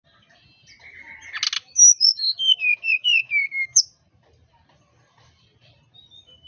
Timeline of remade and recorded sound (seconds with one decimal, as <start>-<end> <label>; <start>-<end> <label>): 0.0-1.6 recorded; 1.6-3.8 remade; 3.8-6.5 recorded